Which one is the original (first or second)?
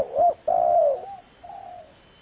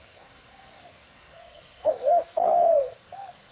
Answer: first